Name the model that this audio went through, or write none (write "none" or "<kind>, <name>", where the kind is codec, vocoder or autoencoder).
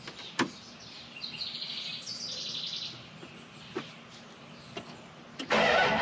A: none